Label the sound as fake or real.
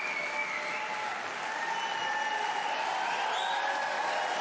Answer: real